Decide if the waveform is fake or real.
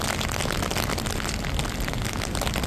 real